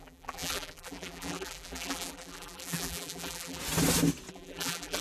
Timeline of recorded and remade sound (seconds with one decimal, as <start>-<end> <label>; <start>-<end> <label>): 0.0-3.6 remade; 3.6-4.3 recorded; 4.3-5.0 remade